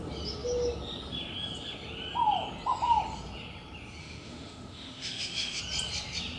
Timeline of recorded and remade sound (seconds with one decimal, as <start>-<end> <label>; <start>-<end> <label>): 0.0-4.0 recorded; 4.0-5.6 remade; 5.6-6.4 recorded